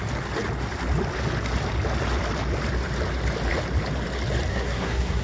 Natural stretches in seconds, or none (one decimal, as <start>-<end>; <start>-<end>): 0.0-4.5